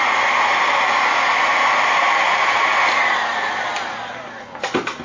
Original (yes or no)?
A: yes